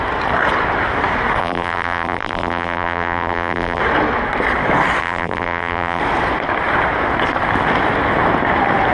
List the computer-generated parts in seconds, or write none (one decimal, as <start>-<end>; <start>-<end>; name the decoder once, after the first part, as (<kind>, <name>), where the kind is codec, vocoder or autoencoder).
1.4-3.8 (vocoder, BigVGAN v2); 5.0-6.0